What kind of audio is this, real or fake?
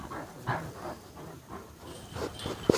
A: real